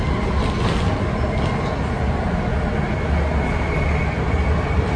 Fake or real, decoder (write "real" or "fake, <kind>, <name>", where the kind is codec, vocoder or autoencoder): real